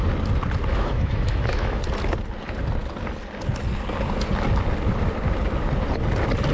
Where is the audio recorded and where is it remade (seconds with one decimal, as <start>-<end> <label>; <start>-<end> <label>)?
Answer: 0.0-0.7 recorded; 0.7-1.8 remade; 1.8-6.5 recorded